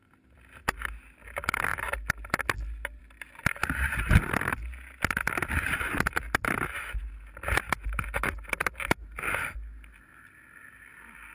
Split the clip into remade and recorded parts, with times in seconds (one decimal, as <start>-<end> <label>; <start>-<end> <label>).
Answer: 0.0-11.3 recorded